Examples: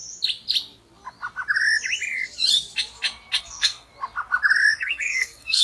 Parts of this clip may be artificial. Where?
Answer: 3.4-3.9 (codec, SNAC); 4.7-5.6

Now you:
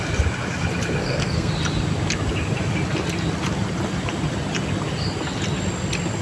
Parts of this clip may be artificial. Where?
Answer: 1.0-1.5 (codec, SNAC)

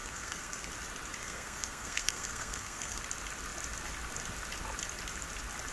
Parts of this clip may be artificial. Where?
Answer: 0.0-0.7 (codec, SNAC); 1.2-3.0

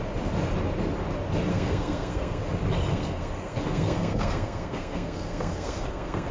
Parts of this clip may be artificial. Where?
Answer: 1.5-2.4 (codec, SNAC); 2.9-6.3

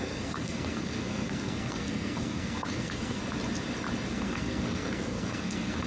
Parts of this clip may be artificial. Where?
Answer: 0.0-3.2 (codec, SNAC); 4.1-5.9